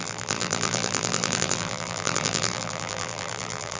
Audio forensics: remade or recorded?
remade